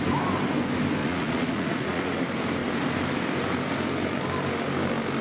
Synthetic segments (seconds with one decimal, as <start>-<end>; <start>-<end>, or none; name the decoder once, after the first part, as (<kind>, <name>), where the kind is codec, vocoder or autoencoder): 1.0-2.1 (vocoder, Vocos)